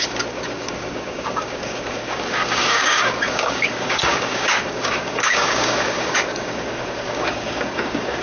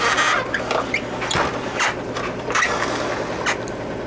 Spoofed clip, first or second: first